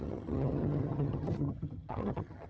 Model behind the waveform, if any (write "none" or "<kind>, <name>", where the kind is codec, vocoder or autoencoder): vocoder, HiFi-GAN